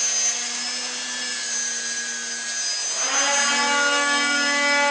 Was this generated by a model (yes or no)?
no